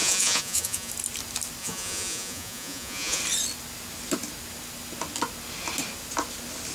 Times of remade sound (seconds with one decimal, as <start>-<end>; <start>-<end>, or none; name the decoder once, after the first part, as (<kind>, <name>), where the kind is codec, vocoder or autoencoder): 0.0-0.9 (vocoder, Vocos); 1.6-3.2